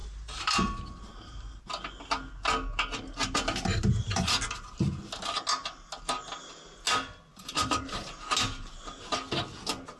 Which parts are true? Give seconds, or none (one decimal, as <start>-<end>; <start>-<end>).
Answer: 1.6-7.3; 8.0-10.0